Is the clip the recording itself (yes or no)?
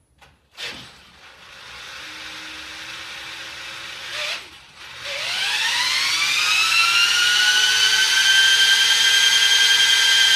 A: yes